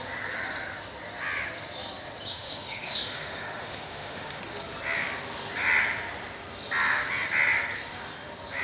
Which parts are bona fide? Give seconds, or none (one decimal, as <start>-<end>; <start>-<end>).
0.0-2.3; 4.4-8.6